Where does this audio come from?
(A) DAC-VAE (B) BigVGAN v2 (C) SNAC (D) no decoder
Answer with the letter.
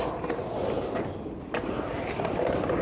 D